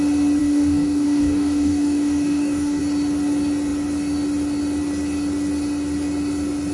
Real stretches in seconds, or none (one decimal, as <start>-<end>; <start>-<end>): 0.0-0.4; 2.8-6.7